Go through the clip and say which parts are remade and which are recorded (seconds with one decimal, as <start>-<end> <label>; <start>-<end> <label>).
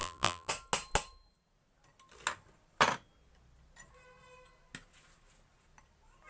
0.0-0.5 remade; 0.5-6.3 recorded